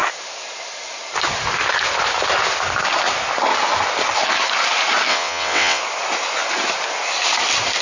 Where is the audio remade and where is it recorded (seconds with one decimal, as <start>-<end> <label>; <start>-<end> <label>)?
0.0-5.1 recorded; 5.1-5.8 remade; 5.8-7.8 recorded